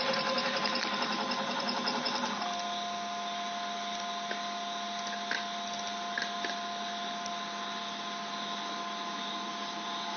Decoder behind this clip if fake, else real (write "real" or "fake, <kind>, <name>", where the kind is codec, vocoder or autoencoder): real